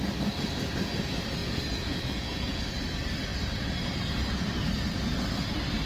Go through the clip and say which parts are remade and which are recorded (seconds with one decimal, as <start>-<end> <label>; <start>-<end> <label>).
0.0-1.4 recorded; 1.4-2.6 remade; 2.6-5.9 recorded